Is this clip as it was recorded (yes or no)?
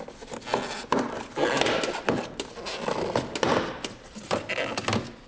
yes